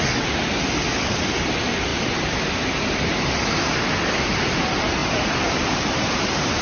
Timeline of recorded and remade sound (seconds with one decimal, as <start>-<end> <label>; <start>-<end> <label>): 0.0-1.9 recorded; 1.9-3.0 remade; 3.0-5.0 recorded; 5.0-6.6 remade